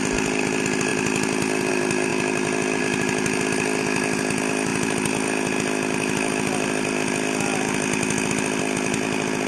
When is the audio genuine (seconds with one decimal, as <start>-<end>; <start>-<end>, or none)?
0.0-9.5